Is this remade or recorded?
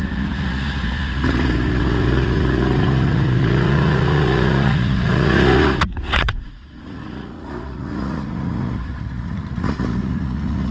remade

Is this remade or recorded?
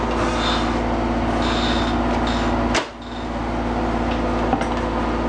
recorded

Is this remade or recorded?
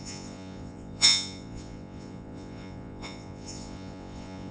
remade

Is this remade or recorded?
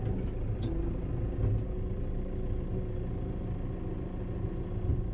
recorded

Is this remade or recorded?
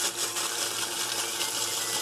recorded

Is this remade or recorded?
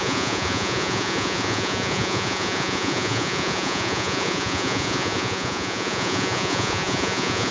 remade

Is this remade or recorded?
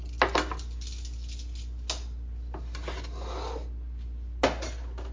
recorded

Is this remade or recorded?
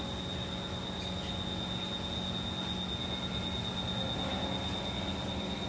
recorded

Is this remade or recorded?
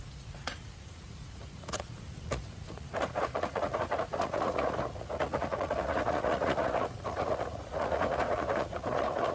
remade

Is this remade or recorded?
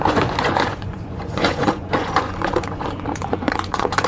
remade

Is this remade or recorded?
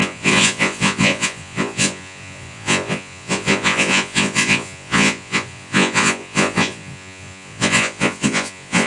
remade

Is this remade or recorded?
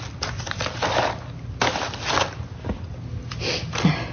recorded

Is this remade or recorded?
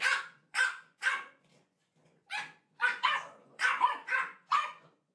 remade